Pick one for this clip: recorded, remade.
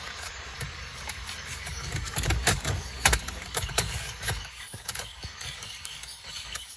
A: remade